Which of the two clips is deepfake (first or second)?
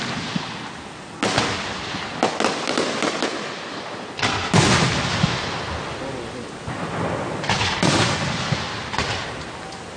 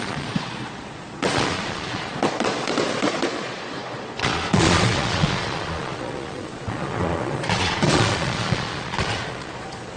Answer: second